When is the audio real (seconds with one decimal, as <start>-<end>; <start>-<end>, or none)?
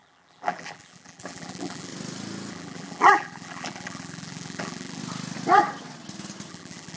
1.9-2.5; 5.0-6.5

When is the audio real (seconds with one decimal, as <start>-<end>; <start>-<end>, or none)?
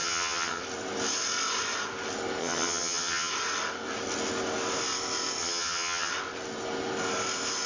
0.6-2.4; 3.3-5.4; 6.1-7.7